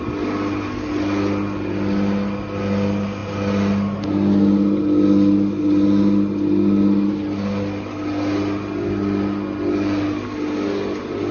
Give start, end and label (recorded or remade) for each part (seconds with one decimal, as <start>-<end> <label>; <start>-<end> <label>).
0.0-11.3 recorded